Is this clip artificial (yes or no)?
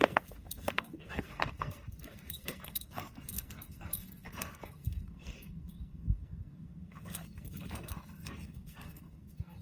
yes